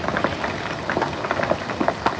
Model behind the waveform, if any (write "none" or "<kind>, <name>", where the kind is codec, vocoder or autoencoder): none